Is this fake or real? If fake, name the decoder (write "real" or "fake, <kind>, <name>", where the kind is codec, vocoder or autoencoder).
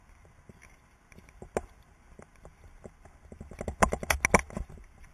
real